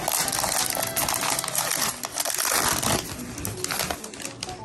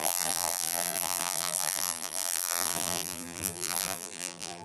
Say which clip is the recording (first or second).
first